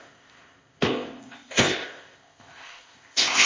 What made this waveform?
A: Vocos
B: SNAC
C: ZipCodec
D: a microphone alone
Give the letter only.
C